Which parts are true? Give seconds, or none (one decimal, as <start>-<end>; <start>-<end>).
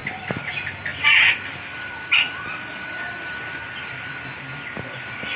0.0-0.9; 4.1-5.4